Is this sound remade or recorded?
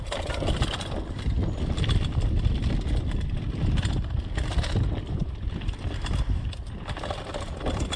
recorded